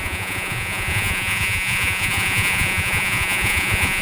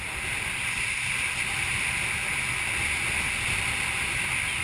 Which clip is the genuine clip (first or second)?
second